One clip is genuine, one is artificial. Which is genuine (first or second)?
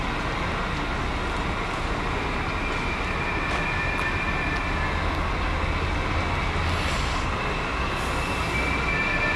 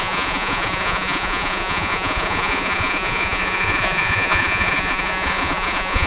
first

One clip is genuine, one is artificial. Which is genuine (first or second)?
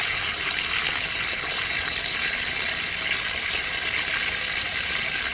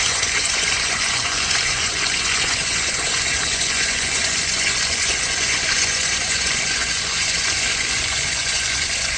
first